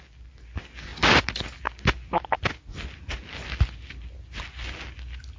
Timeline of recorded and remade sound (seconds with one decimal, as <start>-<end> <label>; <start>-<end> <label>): 0.0-5.4 recorded